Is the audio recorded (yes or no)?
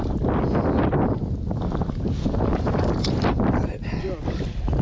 yes